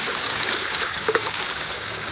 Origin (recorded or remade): remade